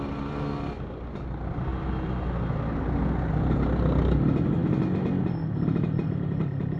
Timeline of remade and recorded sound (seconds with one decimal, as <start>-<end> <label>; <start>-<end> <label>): 0.0-6.8 recorded